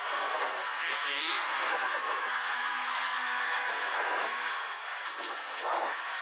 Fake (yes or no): yes